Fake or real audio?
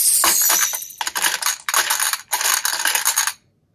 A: real